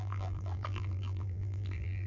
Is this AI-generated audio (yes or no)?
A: yes